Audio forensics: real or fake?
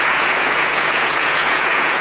fake